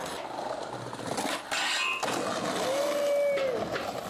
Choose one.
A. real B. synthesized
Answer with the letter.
A